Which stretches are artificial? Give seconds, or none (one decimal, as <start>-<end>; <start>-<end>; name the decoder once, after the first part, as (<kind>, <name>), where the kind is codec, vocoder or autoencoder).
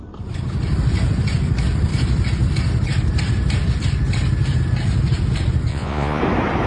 5.7-6.2 (vocoder, Vocos)